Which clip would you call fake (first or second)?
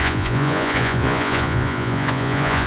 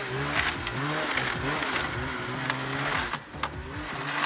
first